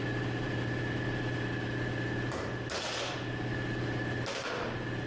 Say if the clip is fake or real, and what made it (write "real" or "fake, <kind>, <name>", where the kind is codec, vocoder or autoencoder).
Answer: real